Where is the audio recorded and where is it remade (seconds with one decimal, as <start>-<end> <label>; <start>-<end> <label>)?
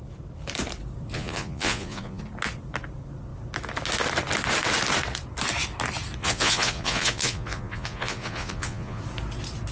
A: 0.0-1.1 recorded; 1.1-2.2 remade; 2.2-6.2 recorded; 6.2-9.0 remade; 9.0-9.7 recorded